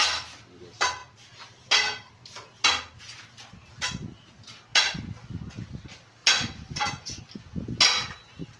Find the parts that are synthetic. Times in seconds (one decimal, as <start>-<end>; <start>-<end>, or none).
6.2-7.2